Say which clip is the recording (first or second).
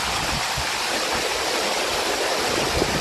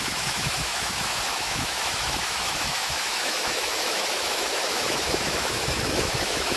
first